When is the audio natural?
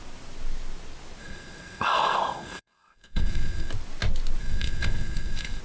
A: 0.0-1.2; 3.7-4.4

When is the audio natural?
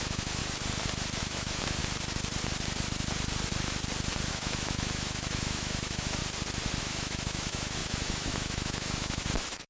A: 0.4-1.2; 1.8-4.3; 6.2-6.8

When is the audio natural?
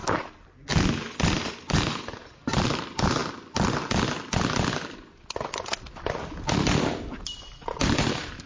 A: 0.0-1.2; 3.2-7.2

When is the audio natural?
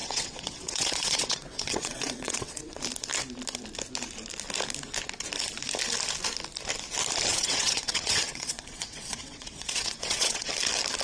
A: 2.8-7.3; 10.5-11.0